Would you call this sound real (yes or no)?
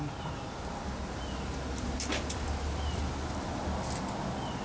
yes